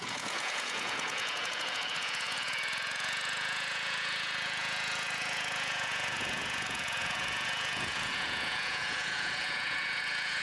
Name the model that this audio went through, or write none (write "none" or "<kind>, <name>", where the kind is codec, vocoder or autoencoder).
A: vocoder, Vocos